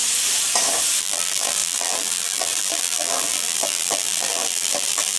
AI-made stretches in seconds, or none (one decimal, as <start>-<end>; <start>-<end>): 1.0-5.2